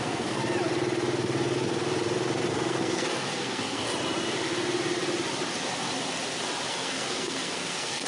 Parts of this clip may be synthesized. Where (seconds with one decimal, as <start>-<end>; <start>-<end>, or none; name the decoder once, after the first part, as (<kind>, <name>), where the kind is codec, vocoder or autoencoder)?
0.0-0.4 (codec, SNAC); 2.5-3.9; 6.7-8.1